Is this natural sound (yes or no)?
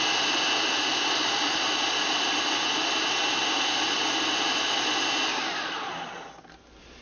yes